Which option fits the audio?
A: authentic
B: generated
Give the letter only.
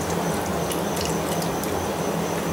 A